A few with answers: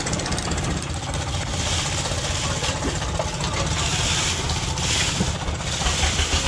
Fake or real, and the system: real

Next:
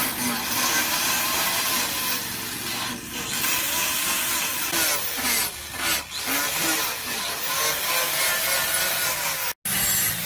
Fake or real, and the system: real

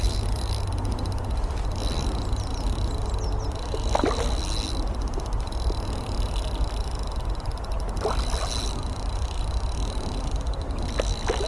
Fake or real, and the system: real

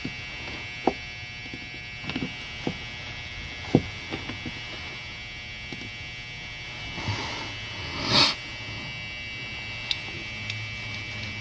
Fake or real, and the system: real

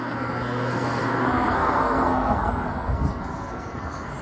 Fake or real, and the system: fake, codec, SNAC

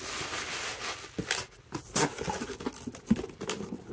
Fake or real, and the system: real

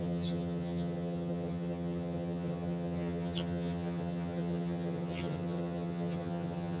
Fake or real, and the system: fake, vocoder, HiFi-GAN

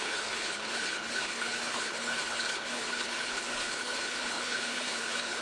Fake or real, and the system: fake, codec, HILCodec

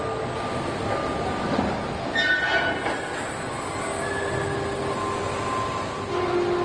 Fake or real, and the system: real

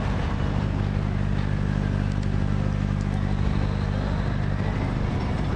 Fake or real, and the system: real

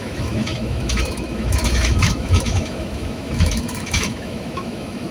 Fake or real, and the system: fake, autoencoder, DAC-VAE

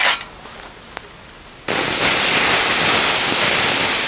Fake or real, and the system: real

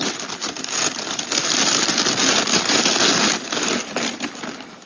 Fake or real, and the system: real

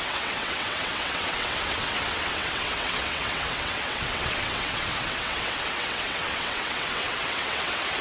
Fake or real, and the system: fake, vocoder, WaveNeXt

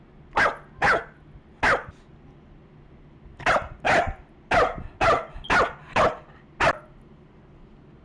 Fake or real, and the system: real